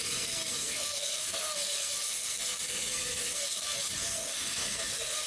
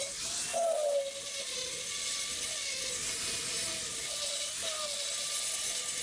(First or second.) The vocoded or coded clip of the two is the first